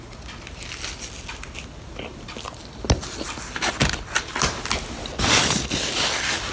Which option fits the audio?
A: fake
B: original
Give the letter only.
B